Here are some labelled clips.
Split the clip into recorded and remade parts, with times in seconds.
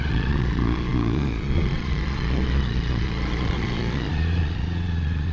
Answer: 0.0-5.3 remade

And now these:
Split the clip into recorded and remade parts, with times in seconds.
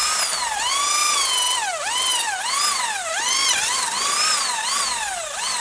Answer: 0.0-5.6 recorded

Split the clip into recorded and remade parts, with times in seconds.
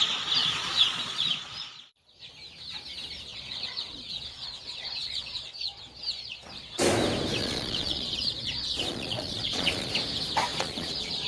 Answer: 0.0-0.4 recorded; 0.4-2.3 remade; 2.3-3.3 recorded; 3.3-6.8 remade; 6.8-7.4 recorded; 7.4-9.9 remade; 9.9-10.5 recorded; 10.5-11.3 remade